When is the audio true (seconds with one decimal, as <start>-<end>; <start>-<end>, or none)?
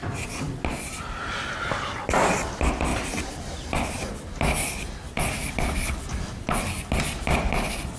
0.0-8.0